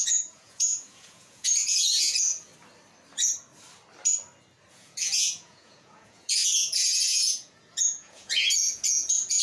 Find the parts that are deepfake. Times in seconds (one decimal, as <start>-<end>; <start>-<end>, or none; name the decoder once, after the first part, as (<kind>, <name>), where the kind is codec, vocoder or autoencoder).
0.0-2.5 (vocoder, Vocos); 4.7-9.4